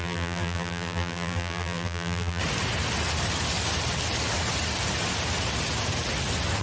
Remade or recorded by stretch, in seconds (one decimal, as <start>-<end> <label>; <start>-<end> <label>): 0.0-2.4 remade; 2.4-6.6 recorded